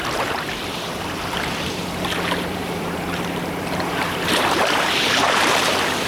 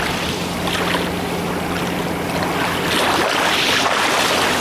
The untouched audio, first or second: second